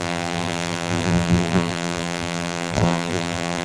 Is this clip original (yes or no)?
no